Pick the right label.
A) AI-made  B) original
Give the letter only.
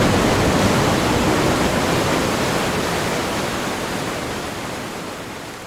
B